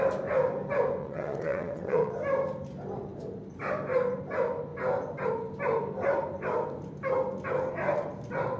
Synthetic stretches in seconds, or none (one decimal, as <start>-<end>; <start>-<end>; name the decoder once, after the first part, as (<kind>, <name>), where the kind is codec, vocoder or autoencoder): 1.0-2.1 (vocoder, WaveNeXt)